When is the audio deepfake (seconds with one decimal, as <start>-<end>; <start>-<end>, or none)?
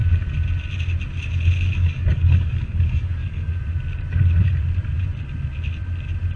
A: 1.8-3.5